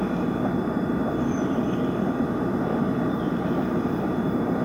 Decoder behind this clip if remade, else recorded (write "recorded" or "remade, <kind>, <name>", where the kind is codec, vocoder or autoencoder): remade, vocoder, BigVGAN v2